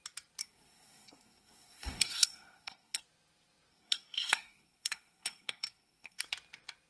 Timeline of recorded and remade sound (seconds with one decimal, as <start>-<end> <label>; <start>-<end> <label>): 0.0-0.4 recorded; 0.4-3.0 remade; 3.0-3.7 recorded; 3.7-6.2 remade; 6.2-6.9 recorded